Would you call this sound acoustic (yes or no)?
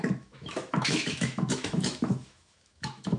no